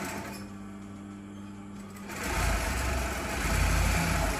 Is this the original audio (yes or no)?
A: yes